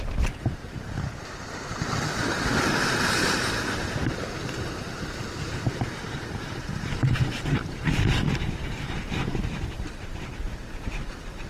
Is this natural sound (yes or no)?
no